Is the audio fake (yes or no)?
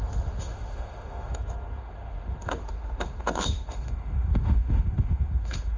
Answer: yes